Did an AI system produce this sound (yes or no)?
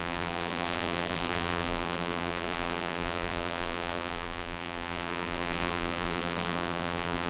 yes